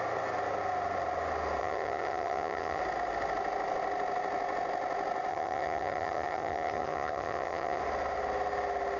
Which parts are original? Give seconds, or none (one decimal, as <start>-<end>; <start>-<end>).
0.0-1.6; 2.8-5.3; 7.8-9.0